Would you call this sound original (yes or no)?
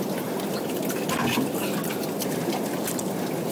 no